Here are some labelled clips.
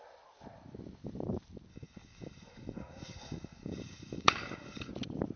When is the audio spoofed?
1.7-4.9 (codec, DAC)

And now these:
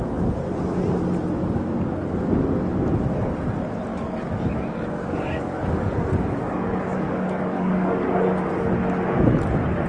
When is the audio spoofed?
3.9-8.0 (codec, DAC)

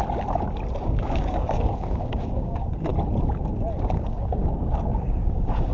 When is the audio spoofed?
0.8-2.9 (codec, DAC); 3.9-5.7

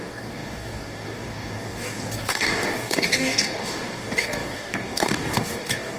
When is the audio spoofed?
0.0-6.0 (codec, DAC)